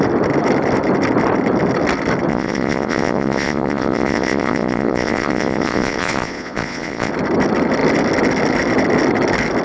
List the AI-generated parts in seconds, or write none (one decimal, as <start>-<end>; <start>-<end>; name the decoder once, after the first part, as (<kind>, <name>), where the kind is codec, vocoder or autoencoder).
2.3-7.1 (vocoder, Vocos)